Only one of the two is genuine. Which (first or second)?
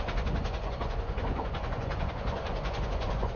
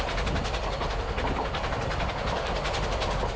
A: second